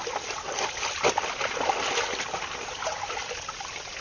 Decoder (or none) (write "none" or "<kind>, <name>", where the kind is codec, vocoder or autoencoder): none